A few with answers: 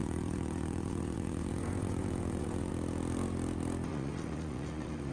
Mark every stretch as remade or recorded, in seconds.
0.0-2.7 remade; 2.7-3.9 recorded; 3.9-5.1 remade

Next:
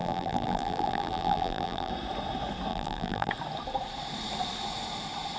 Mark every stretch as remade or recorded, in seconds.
0.0-1.9 remade; 1.9-2.7 recorded; 2.7-3.3 remade; 3.3-5.4 recorded

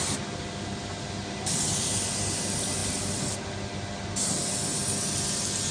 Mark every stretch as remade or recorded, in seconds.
0.0-5.7 recorded

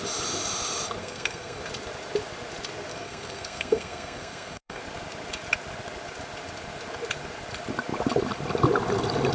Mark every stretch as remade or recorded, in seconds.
0.0-1.0 recorded; 1.0-1.6 remade; 1.6-2.9 recorded; 2.9-4.8 remade; 4.8-9.3 recorded